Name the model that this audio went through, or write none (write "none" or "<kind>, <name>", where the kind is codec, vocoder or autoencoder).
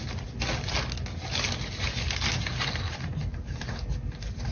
none